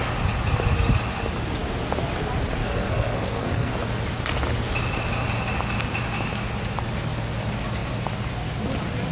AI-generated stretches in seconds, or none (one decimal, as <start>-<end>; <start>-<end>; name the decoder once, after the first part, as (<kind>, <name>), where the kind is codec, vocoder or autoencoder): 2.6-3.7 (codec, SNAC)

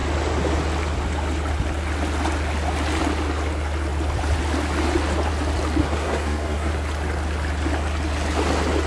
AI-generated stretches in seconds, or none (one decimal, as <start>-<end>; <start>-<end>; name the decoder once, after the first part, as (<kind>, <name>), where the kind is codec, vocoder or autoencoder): 5.8-6.7 (codec, SNAC)

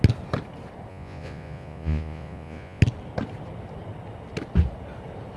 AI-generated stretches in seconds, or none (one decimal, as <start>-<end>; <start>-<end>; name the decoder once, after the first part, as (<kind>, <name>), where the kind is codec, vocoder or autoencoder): 0.9-2.8 (vocoder, Vocos)